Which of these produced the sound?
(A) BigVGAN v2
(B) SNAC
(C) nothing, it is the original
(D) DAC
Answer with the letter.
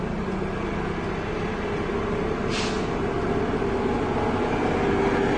C